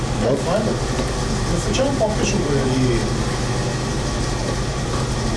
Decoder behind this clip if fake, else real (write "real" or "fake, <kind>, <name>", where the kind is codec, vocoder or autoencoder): real